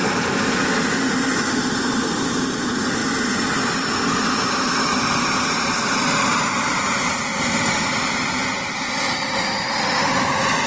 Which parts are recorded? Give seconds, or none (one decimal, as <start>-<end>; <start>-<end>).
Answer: 1.3-1.9; 3.0-4.3; 7.3-8.9